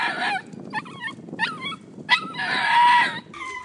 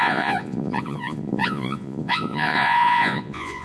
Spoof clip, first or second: second